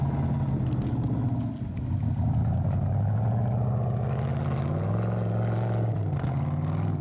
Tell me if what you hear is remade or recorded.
recorded